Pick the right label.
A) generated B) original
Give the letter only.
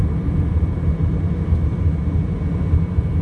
B